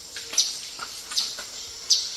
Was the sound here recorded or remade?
recorded